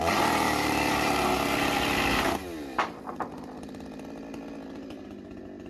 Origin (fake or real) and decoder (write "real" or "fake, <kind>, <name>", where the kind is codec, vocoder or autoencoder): real